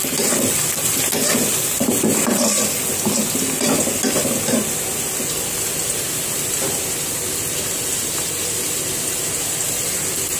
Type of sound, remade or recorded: recorded